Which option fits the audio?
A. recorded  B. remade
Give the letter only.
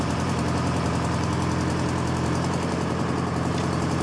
B